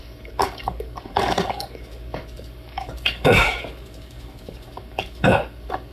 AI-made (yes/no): yes